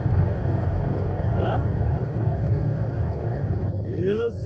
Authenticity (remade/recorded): remade